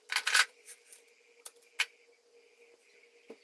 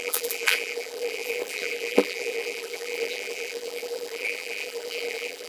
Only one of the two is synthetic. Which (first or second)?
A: second